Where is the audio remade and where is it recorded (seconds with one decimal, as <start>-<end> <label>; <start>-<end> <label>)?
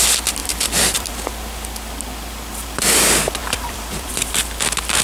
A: 0.0-0.4 recorded; 0.4-1.1 remade; 1.1-3.4 recorded; 3.4-4.1 remade; 4.1-5.0 recorded